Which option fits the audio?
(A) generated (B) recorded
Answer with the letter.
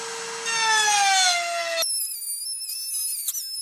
B